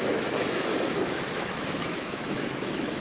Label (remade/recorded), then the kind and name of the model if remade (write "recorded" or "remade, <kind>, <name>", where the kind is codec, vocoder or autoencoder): remade, autoencoder, DAC-VAE